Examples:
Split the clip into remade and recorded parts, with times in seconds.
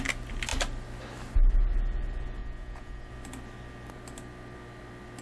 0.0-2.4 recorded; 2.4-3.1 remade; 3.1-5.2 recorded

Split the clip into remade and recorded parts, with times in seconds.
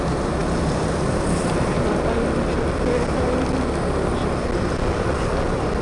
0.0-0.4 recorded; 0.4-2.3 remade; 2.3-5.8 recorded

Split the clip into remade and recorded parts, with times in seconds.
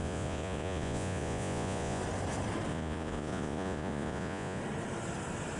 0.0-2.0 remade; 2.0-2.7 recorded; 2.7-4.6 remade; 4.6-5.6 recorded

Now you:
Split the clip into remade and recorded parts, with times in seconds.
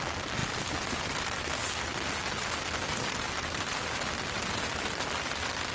0.0-5.7 recorded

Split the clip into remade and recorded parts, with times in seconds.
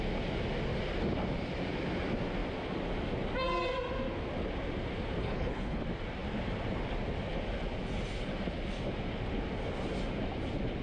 0.0-5.2 recorded; 5.2-5.8 remade; 5.8-10.8 recorded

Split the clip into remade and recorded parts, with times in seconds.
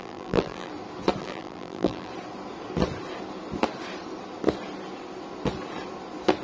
0.0-0.7 remade; 0.7-1.2 recorded; 1.2-2.1 remade; 2.1-6.4 recorded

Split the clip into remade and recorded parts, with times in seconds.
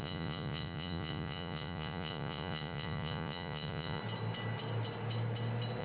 0.0-4.0 remade; 4.0-5.8 recorded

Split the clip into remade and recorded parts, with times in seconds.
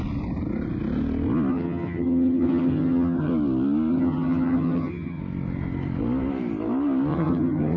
0.0-1.5 recorded; 1.5-3.3 remade; 3.3-3.9 recorded; 3.9-5.2 remade; 5.2-7.1 recorded; 7.1-7.8 remade